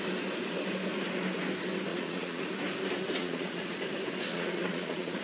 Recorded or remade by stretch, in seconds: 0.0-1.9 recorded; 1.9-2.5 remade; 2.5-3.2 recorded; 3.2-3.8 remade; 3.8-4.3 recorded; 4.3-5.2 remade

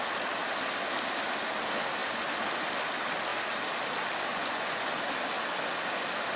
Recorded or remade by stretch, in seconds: 0.0-4.3 recorded; 4.3-4.9 remade; 4.9-6.4 recorded